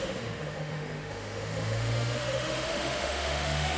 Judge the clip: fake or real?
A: fake